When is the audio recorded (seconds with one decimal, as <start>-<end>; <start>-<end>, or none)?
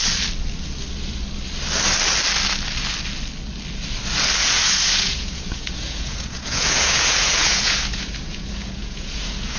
0.0-4.4